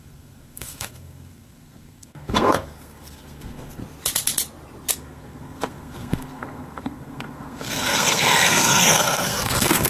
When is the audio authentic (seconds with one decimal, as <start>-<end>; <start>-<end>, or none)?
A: 3.8-4.9